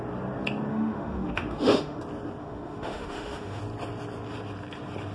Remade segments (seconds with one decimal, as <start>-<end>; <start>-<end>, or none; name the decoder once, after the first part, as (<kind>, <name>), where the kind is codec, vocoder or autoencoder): 0.7-2.0 (autoencoder, DAC-VAE); 2.4-3.6